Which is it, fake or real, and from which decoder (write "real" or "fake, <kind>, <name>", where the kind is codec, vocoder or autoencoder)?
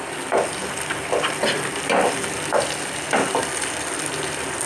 real